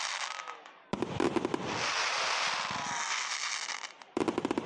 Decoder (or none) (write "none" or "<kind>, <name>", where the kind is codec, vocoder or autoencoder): none